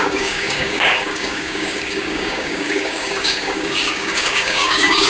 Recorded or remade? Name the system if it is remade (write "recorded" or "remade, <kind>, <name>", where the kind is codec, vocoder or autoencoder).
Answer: remade, codec, DAC